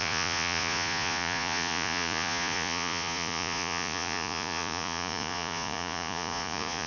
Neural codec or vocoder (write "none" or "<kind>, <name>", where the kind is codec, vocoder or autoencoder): vocoder, Vocos